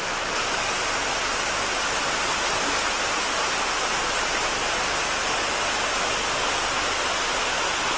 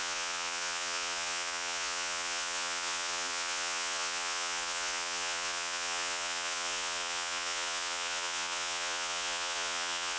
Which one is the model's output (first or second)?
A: second